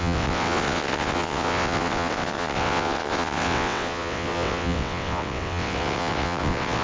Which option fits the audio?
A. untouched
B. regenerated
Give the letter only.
B